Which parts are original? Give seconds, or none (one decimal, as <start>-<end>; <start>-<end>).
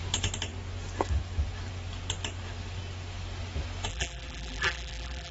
0.0-3.9